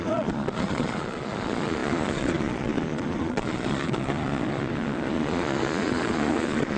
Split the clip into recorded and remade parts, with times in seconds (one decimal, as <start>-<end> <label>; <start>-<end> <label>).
0.0-6.8 remade